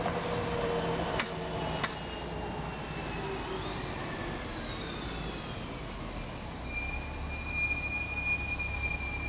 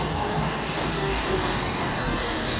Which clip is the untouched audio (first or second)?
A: first